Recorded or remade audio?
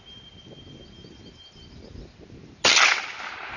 recorded